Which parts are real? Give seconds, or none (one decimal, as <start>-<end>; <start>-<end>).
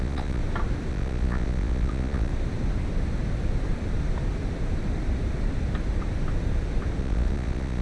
0.4-0.9; 2.3-7.0